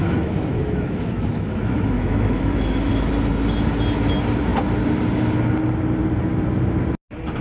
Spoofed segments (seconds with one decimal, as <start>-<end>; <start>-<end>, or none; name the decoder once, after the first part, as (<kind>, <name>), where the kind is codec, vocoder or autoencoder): 0.0-2.9 (autoencoder, DAC-VAE)